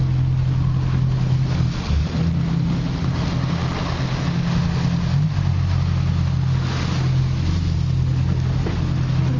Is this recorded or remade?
recorded